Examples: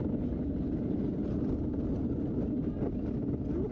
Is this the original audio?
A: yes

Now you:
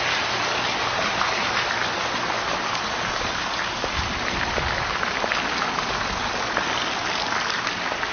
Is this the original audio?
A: yes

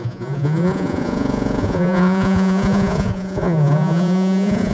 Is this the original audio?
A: no